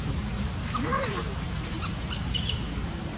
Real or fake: fake